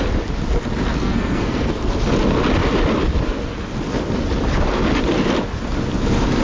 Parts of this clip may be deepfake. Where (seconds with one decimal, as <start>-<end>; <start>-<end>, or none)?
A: 1.0-1.9